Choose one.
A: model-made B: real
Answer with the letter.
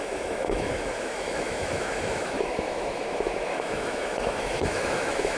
A